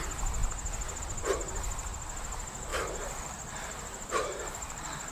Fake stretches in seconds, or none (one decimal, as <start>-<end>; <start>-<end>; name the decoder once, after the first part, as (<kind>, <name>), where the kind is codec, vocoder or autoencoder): 2.7-5.1 (vocoder, BigVGAN v2)

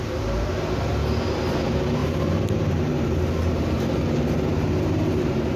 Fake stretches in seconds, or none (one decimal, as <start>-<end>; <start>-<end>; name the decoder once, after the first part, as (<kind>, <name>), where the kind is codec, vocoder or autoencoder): 2.0-5.6 (vocoder, BigVGAN v2)

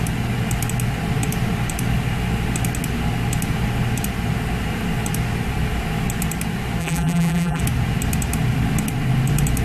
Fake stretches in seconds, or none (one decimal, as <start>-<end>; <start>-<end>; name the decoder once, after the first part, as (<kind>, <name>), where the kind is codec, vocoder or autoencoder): 6.8-7.6 (vocoder, BigVGAN v2)

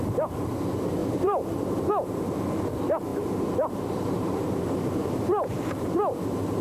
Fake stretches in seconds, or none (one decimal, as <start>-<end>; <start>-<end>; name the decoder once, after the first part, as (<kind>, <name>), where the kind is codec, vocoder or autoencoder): 1.0-1.9 (vocoder, BigVGAN v2); 3.1-5.9

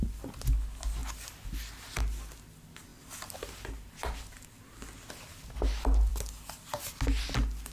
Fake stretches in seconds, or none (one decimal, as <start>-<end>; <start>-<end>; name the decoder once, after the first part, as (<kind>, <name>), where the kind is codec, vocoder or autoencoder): none

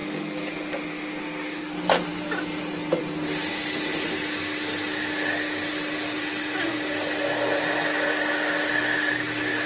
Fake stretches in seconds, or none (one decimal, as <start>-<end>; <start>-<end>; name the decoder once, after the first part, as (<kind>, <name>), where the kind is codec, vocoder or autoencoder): none